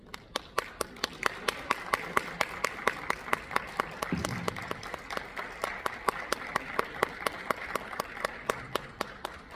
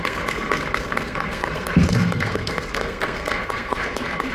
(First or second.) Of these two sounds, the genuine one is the first